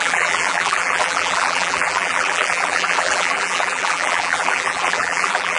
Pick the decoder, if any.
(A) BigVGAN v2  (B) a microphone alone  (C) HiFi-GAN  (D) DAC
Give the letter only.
A